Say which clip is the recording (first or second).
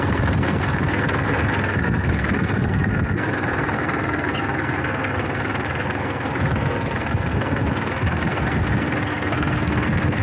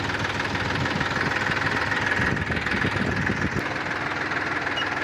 second